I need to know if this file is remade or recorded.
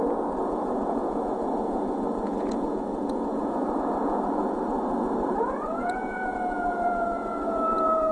remade